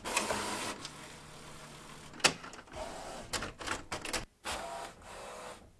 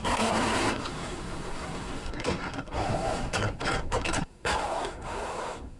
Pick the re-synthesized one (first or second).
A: second